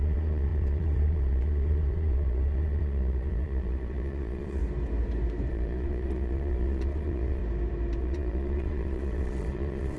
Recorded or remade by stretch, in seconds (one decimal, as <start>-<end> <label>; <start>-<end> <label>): 0.0-4.6 remade; 4.6-5.5 recorded; 5.5-7.4 remade; 7.4-8.0 recorded; 8.0-10.0 remade